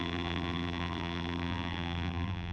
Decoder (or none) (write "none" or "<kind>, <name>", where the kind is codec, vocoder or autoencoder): vocoder, BigVGAN v2